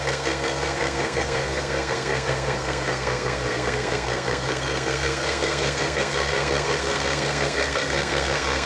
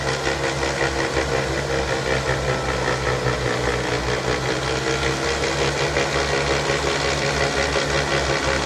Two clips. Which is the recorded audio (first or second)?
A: second